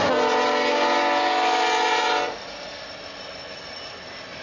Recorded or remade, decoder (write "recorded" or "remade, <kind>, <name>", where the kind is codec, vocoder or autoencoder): recorded